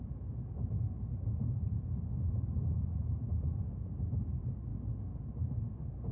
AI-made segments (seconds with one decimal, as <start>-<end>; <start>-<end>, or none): 0.0-4.7; 5.2-6.1